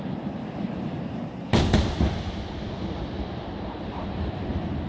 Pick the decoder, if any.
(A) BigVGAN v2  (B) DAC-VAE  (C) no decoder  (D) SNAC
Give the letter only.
C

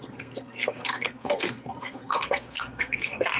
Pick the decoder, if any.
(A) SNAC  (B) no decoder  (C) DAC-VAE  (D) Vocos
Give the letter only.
A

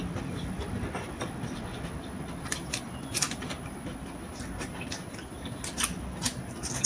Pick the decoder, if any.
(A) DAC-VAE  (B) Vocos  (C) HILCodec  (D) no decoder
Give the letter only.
D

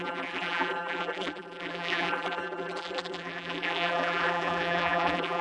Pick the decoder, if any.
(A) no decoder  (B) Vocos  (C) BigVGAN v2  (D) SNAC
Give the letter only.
C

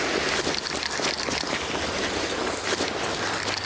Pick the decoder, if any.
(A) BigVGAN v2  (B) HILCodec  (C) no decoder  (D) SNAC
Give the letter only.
C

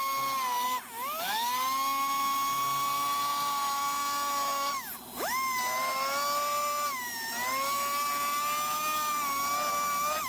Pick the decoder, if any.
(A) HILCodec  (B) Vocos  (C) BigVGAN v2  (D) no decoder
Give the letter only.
D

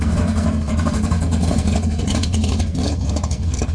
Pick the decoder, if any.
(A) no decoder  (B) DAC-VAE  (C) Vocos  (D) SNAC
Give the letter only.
D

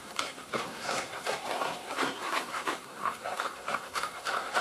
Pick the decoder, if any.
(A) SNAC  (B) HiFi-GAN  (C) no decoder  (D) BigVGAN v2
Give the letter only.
A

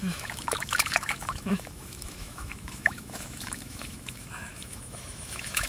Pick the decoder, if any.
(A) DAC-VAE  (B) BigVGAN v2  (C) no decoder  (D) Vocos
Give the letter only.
A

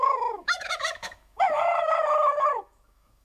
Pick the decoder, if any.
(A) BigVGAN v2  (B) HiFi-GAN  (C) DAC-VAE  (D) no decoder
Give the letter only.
C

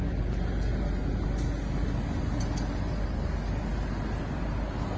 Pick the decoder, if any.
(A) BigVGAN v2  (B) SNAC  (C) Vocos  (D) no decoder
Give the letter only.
D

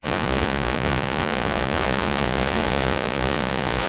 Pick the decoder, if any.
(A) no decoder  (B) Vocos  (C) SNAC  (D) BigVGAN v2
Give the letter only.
B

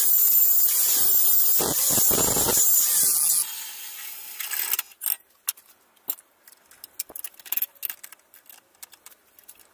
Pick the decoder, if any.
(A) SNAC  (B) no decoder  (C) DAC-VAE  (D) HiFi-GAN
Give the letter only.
B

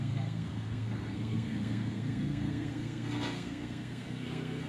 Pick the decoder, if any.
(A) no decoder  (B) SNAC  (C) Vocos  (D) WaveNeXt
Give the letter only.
B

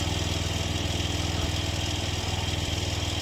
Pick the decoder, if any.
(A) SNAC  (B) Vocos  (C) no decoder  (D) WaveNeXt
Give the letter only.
C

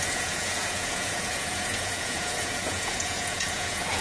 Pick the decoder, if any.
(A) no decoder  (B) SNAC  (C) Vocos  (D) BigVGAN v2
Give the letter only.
C